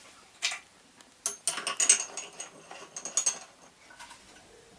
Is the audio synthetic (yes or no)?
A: no